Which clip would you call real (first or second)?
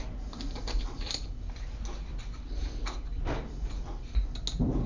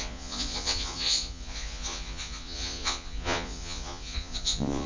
first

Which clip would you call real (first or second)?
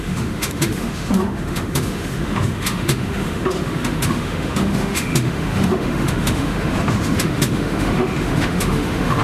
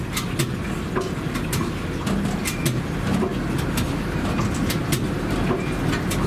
second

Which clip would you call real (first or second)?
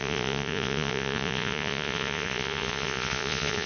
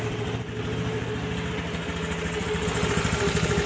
second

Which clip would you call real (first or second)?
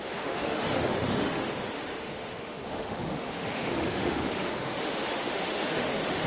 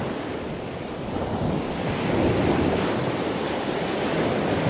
second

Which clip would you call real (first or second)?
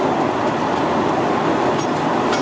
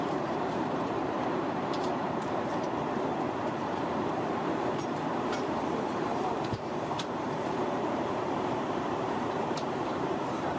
first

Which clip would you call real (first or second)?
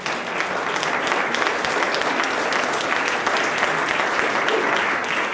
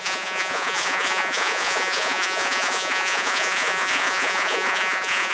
first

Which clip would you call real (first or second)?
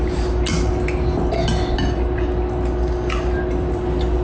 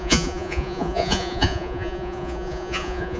first